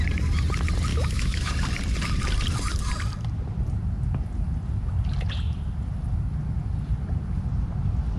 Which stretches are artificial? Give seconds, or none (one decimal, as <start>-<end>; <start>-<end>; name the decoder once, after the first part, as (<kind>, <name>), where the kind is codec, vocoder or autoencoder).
0.9-1.5 (autoencoder, DAC-VAE)